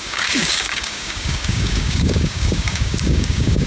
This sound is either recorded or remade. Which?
remade